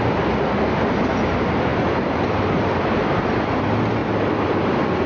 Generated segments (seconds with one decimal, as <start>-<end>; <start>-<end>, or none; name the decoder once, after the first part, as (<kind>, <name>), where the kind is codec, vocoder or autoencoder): none